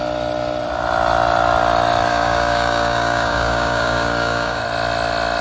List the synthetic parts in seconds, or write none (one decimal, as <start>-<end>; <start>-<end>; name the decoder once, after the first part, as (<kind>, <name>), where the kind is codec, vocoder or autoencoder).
2.1-4.6 (codec, DAC)